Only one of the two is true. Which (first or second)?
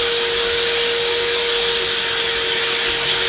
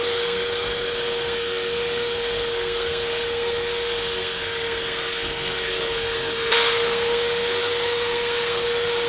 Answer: first